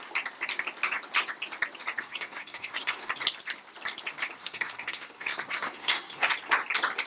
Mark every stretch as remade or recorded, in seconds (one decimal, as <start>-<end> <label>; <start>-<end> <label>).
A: 0.0-2.0 recorded; 2.0-3.1 remade; 3.1-4.4 recorded; 4.4-6.3 remade; 6.3-7.1 recorded